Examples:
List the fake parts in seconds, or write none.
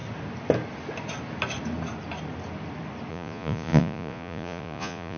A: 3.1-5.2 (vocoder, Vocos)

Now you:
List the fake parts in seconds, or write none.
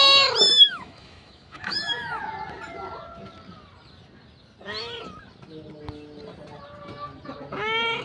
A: 0.5-2.2 (autoencoder, DAC-VAE)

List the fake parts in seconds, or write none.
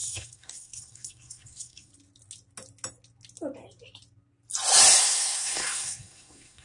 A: 0.0-1.9 (codec, SNAC); 5.0-6.6